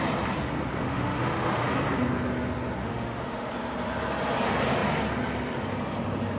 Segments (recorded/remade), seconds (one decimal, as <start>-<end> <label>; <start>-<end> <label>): 0.0-0.8 recorded; 0.8-1.7 remade; 1.7-2.8 recorded; 2.8-3.5 remade; 3.5-6.4 recorded